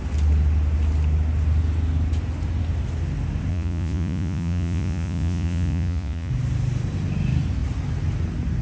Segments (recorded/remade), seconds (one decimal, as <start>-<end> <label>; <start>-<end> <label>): 0.0-3.5 recorded; 3.5-6.3 remade; 6.3-8.6 recorded